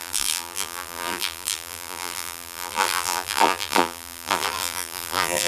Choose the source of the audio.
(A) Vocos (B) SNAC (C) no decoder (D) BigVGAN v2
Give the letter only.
D